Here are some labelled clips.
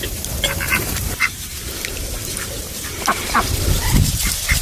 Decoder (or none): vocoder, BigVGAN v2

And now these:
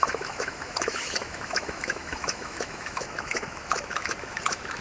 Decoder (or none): autoencoder, DAC-VAE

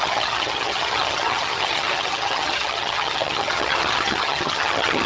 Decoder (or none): vocoder, HiFi-GAN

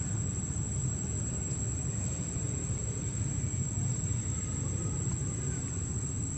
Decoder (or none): none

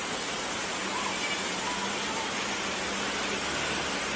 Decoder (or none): none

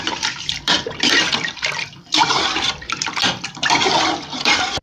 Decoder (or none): vocoder, BigVGAN v2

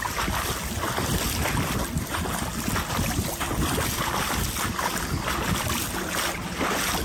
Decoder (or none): none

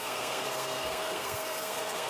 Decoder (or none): codec, SNAC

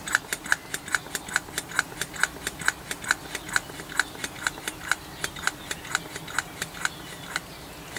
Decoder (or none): none